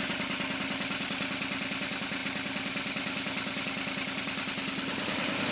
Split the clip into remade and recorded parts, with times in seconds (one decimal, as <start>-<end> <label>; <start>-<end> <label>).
0.0-5.5 recorded